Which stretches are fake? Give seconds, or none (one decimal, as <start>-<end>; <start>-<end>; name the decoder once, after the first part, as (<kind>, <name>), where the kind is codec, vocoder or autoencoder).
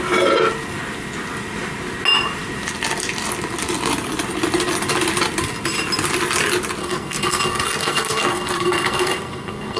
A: 6.8-9.8 (codec, SNAC)